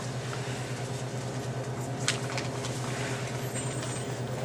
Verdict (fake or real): real